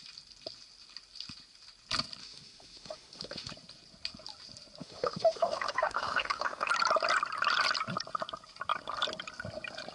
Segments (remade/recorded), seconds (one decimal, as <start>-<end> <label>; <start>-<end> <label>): 0.0-2.2 recorded; 2.2-3.5 remade; 3.5-4.8 recorded; 4.8-6.7 remade; 6.7-9.9 recorded